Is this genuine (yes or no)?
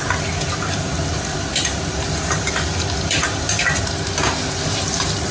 yes